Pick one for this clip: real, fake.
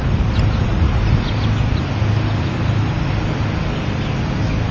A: real